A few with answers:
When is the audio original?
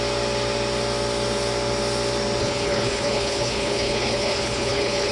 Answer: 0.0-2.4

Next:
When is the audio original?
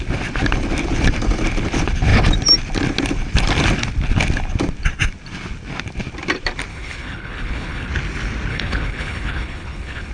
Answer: 0.0-6.7; 7.9-8.5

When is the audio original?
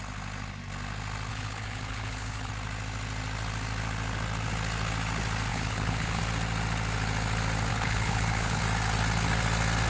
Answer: 0.0-1.3; 2.5-5.5; 6.2-7.7; 8.6-9.9